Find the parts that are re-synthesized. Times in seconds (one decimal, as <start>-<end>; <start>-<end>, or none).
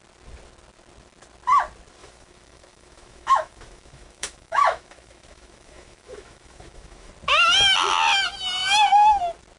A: 2.0-7.1